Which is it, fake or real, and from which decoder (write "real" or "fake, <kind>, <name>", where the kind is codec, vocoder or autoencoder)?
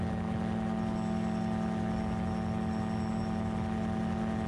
real